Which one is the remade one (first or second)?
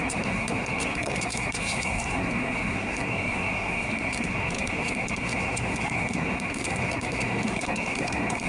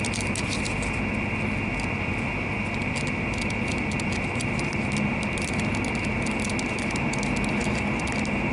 first